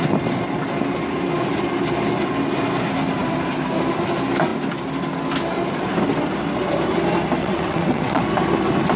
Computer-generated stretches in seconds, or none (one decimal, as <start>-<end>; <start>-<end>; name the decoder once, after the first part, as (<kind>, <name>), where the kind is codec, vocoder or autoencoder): 7.4-8.2 (vocoder, WaveNeXt)